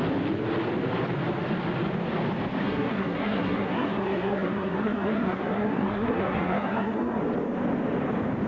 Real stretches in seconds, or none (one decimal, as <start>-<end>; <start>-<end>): 0.0-2.6; 7.2-8.5